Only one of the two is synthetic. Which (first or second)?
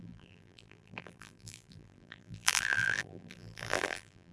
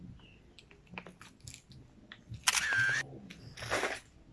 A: first